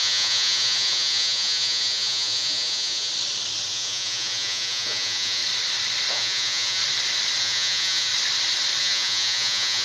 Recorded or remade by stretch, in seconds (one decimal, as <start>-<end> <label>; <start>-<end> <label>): 0.0-3.1 remade; 3.1-3.7 recorded; 3.7-5.4 remade; 5.4-6.1 recorded; 6.1-6.8 remade; 6.8-7.4 recorded; 7.4-8.1 remade; 8.1-8.8 recorded; 8.8-9.8 remade